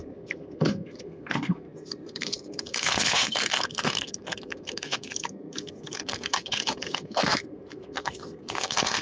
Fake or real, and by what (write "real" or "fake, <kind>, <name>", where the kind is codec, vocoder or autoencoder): fake, codec, SNAC